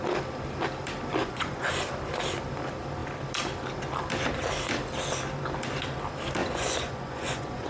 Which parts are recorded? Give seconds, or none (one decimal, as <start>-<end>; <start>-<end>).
0.0-1.2; 1.7-6.4